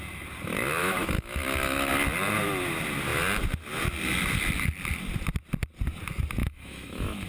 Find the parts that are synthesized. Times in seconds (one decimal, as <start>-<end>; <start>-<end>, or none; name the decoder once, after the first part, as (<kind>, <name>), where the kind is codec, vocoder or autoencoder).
0.8-1.9 (autoencoder, DAC-VAE); 6.4-7.3